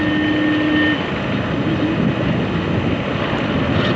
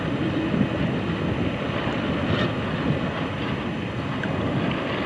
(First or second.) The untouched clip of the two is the first